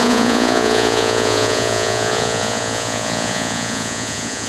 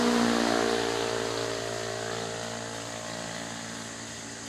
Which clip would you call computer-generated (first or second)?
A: first